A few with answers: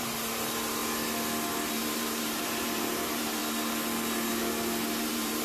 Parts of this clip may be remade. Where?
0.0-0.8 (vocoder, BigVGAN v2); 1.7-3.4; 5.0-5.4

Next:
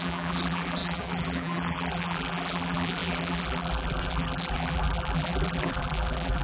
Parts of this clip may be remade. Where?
0.0-6.4 (vocoder, BigVGAN v2)

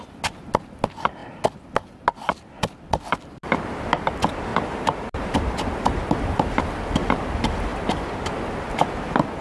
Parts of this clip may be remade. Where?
4.5-5.4 (vocoder, BigVGAN v2)

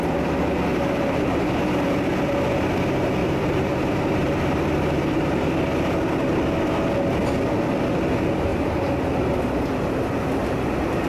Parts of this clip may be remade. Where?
0.7-1.5 (vocoder, BigVGAN v2); 3.2-5.5; 8.5-9.4

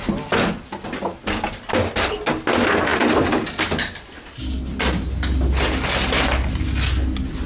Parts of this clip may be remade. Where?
none

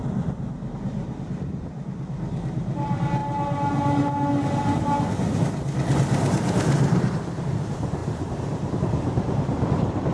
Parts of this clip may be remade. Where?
8.0-8.7 (vocoder, BigVGAN v2)